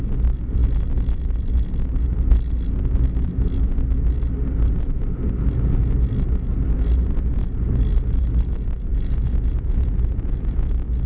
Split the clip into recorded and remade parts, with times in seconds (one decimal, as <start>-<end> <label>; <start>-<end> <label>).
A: 0.0-8.9 recorded; 8.9-10.3 remade; 10.3-11.1 recorded